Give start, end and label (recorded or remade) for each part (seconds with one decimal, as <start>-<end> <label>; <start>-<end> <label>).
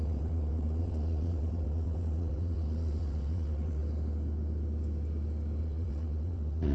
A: 0.0-3.8 remade; 3.8-5.6 recorded; 5.6-6.7 remade